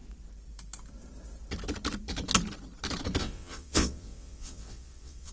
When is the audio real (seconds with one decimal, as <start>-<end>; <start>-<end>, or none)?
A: 0.0-3.2